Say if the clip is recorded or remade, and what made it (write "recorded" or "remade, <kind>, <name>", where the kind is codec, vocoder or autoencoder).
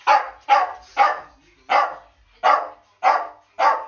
recorded